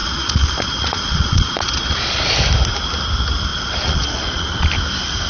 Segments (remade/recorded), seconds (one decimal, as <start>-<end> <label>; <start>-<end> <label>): 0.0-2.3 remade; 2.3-3.5 recorded; 3.5-4.7 remade; 4.7-5.3 recorded